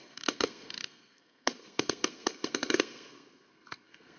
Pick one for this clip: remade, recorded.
remade